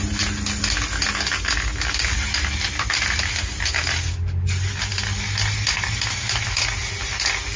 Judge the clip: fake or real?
real